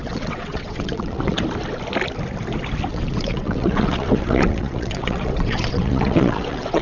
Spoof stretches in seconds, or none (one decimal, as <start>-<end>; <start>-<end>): 0.0-1.4; 2.9-6.8